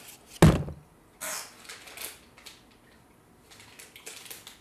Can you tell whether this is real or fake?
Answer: real